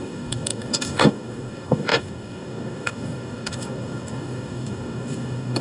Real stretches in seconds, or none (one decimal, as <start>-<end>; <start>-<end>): none